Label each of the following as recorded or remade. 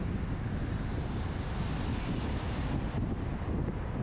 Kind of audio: recorded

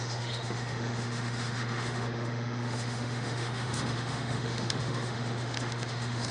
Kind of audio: remade